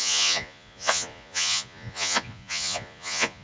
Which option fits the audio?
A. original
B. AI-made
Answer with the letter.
B